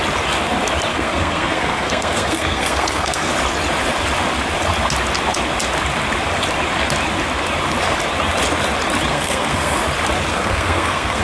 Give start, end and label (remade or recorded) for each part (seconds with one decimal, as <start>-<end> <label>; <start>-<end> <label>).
0.0-0.9 recorded; 0.9-3.3 remade; 3.3-9.1 recorded; 9.1-9.8 remade; 9.8-10.3 recorded; 10.3-11.2 remade